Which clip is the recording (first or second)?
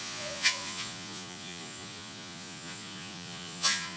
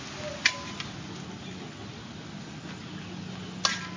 second